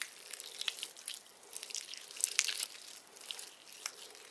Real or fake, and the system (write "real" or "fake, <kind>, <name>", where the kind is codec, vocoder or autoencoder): real